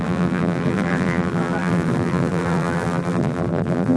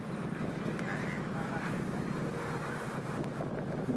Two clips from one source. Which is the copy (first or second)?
first